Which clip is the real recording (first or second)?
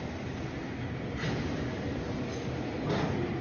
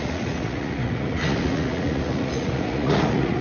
first